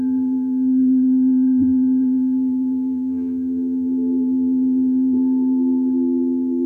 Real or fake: fake